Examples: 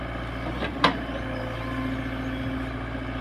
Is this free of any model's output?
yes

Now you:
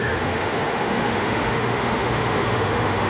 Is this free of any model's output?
no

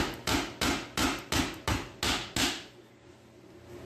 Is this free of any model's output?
yes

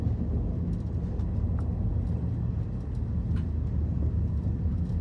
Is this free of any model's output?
yes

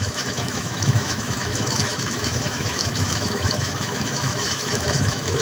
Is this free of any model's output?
no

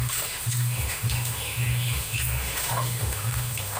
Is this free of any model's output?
no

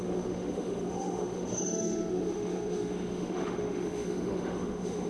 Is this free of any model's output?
no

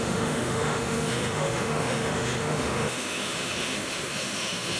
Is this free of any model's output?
no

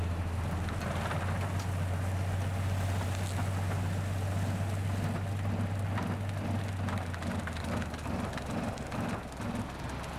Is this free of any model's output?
yes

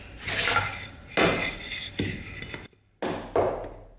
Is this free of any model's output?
yes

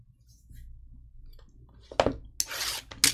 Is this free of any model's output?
yes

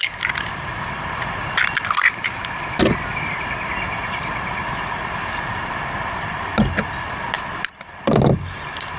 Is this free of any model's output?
yes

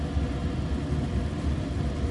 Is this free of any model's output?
yes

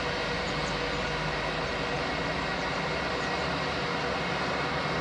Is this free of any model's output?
yes